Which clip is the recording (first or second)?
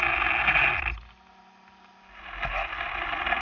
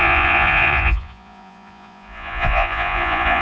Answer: first